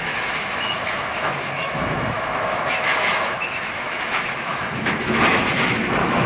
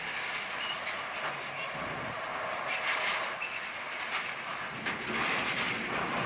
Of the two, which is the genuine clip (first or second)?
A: second